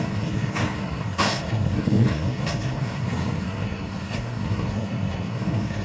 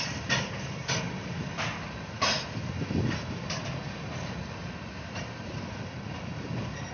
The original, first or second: second